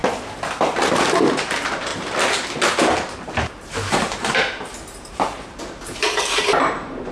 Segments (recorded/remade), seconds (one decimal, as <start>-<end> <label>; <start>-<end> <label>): 0.0-1.2 recorded; 1.2-1.9 remade; 1.9-3.5 recorded; 3.5-7.1 remade